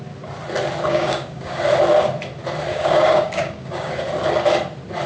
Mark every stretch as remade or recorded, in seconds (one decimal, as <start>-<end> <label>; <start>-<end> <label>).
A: 0.0-0.9 recorded; 0.9-1.6 remade; 1.6-2.7 recorded; 2.7-3.9 remade; 3.9-5.1 recorded

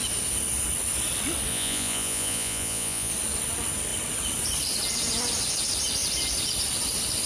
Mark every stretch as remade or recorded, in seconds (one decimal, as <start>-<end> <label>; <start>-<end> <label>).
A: 0.0-1.5 recorded; 1.5-3.1 remade; 3.1-7.3 recorded